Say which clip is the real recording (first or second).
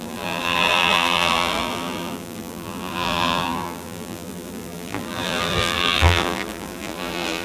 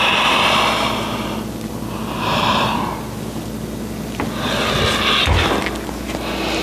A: second